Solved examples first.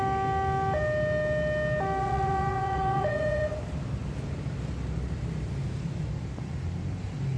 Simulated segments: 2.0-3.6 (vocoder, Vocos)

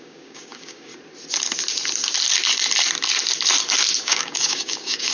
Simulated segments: 0.0-0.9 (codec, DAC); 4.0-5.1

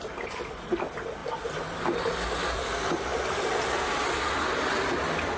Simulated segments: none